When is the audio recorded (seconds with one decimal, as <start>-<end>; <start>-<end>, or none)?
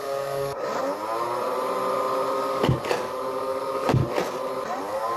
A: 0.8-2.3; 4.0-4.8